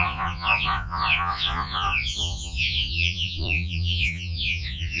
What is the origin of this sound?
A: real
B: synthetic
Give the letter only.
B